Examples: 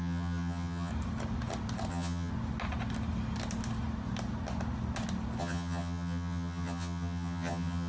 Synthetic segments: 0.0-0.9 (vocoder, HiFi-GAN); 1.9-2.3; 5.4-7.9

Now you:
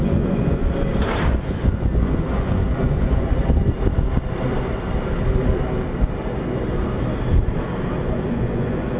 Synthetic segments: 0.0-0.6 (vocoder, Vocos); 1.3-3.4; 8.0-9.0

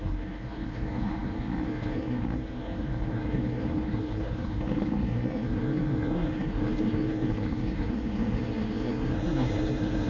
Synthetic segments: 0.0-10.1 (codec, SNAC)